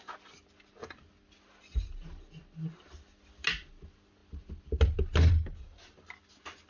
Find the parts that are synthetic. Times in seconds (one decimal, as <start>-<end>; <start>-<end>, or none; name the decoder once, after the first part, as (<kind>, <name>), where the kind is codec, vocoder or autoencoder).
none